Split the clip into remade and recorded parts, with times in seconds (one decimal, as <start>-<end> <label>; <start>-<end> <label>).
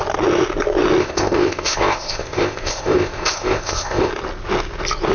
0.0-1.0 recorded; 1.0-4.1 remade; 4.1-5.1 recorded